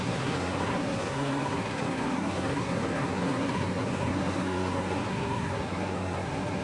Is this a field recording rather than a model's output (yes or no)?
no